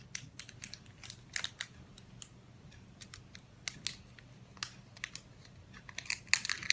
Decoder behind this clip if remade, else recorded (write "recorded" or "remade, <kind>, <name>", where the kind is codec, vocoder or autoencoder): recorded